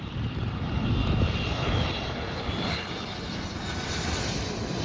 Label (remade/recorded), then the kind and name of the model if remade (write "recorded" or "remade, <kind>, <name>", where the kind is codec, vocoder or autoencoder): recorded